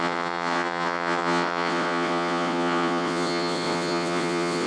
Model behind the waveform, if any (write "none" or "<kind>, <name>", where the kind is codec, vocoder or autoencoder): vocoder, WaveNeXt